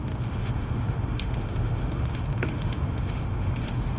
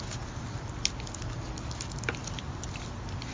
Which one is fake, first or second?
first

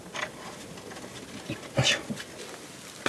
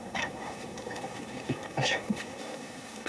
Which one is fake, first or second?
second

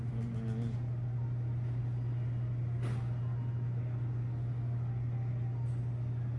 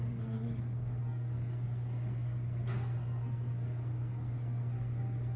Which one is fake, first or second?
second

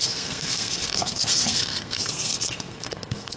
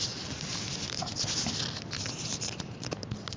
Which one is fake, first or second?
first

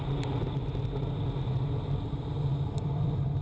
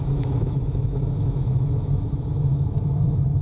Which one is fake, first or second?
second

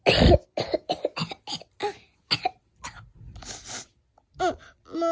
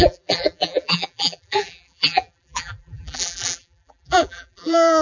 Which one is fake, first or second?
second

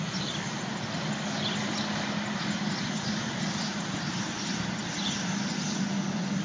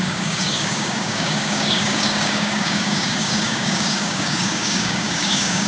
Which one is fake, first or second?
second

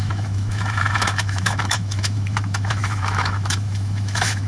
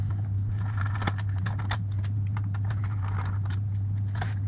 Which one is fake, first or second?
first